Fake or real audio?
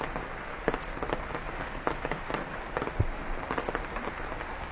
real